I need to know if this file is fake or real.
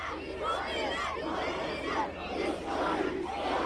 fake